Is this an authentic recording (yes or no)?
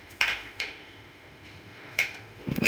no